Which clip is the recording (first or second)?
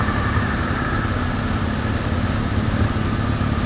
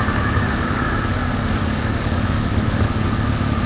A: first